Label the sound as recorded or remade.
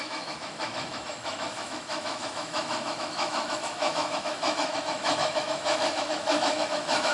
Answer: remade